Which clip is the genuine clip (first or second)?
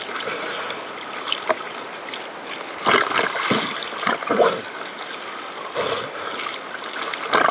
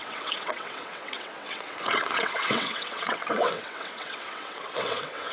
first